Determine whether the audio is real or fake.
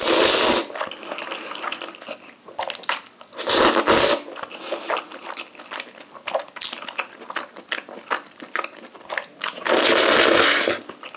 real